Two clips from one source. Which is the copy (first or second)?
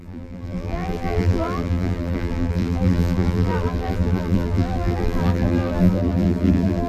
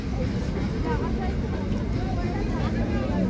first